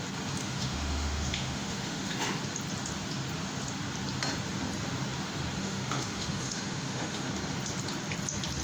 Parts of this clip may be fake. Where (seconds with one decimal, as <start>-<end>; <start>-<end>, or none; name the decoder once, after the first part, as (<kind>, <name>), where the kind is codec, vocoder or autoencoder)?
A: 0.4-2.4 (autoencoder, DAC-VAE); 5.6-7.3